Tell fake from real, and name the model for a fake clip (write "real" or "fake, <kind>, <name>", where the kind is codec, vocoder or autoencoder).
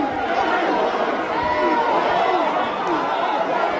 real